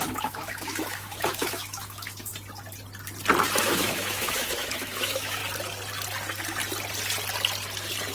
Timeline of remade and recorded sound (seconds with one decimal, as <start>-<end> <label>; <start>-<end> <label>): 0.0-2.3 remade; 2.3-3.6 recorded; 3.6-5.4 remade; 5.4-8.1 recorded